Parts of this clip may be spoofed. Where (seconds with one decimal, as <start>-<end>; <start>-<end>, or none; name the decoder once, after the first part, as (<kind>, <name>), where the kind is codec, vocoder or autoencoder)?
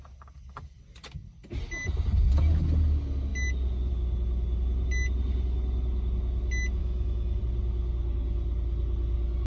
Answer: 6.8-7.4 (autoencoder, DAC-VAE)